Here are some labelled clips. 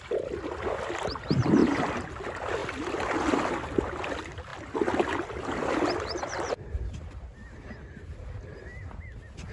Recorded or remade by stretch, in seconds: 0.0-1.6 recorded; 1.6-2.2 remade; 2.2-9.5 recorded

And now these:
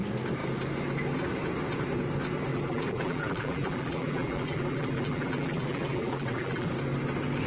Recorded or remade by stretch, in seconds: 0.0-2.5 recorded; 2.5-6.7 remade; 6.7-7.5 recorded

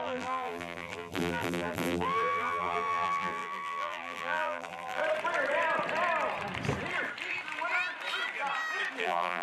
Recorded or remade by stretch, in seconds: 0.0-5.0 remade; 5.0-9.0 recorded; 9.0-9.4 remade

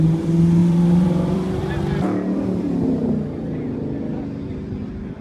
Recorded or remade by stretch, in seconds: 0.0-0.6 recorded; 0.6-1.6 remade; 1.6-5.2 recorded

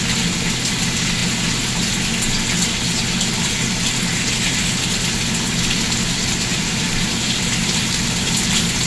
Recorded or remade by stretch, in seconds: 0.0-6.5 recorded; 6.5-8.3 remade; 8.3-8.9 recorded

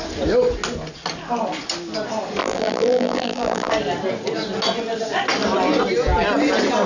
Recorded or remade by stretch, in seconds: 0.0-2.4 recorded; 2.4-3.7 remade; 3.7-6.9 recorded